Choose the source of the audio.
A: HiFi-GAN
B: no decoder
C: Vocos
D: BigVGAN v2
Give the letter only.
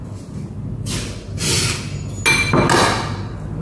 B